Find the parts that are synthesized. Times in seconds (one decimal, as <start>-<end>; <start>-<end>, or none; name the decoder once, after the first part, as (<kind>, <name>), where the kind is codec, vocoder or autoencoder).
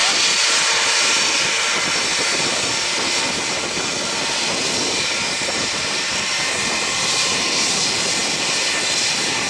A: none